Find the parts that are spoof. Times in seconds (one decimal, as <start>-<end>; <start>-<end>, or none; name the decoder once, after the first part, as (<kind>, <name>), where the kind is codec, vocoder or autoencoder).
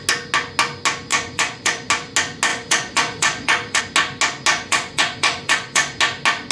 1.1-1.9 (vocoder, Vocos); 2.5-3.8; 4.5-6.0